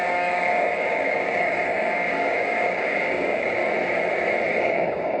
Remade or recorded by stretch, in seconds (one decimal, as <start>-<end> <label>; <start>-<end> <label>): 0.0-3.6 remade; 3.6-4.6 recorded; 4.6-5.2 remade